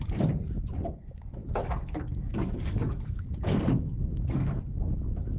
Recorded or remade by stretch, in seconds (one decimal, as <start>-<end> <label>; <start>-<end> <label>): 0.0-1.4 recorded; 1.4-4.6 remade; 4.6-5.4 recorded